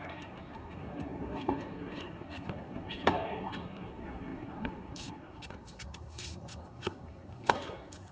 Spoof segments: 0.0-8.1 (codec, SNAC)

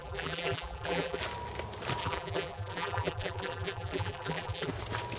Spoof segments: 0.0-1.2 (vocoder, BigVGAN v2); 2.0-4.7

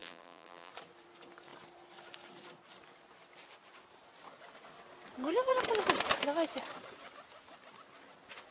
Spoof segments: 0.0-0.7 (vocoder, BigVGAN v2)

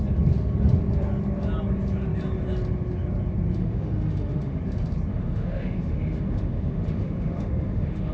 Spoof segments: 3.6-4.6 (autoencoder, DAC-VAE); 5.1-8.1